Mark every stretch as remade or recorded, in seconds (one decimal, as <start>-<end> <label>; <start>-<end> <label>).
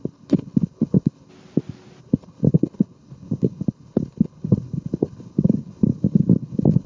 0.0-1.3 remade; 1.3-2.0 recorded; 2.0-6.9 remade